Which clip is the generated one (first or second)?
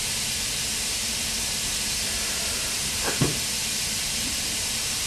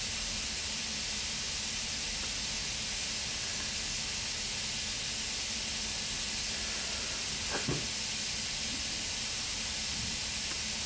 first